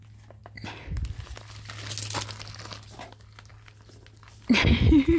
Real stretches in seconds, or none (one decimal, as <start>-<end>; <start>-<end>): 0.0-5.2